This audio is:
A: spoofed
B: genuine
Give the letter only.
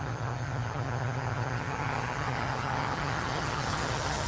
A